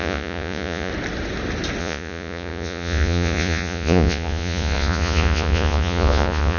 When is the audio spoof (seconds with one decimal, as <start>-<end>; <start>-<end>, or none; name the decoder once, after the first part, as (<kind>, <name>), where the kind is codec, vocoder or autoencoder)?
0.0-0.9 (vocoder, Vocos); 1.8-6.6